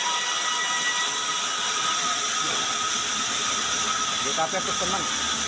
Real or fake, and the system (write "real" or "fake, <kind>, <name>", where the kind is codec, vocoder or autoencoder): real